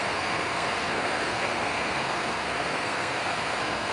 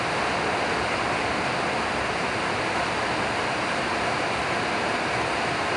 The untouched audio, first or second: second